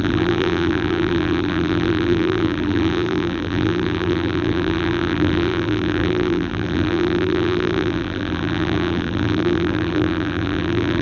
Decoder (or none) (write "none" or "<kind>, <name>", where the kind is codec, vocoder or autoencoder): vocoder, BigVGAN v2